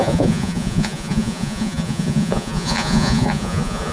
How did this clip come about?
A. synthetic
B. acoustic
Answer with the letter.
A